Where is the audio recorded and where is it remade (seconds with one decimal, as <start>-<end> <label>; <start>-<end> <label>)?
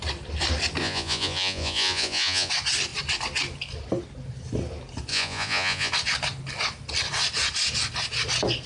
0.0-0.8 recorded; 0.8-2.5 remade; 2.5-5.1 recorded; 5.1-5.9 remade; 5.9-8.7 recorded